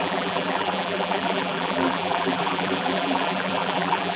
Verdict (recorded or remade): remade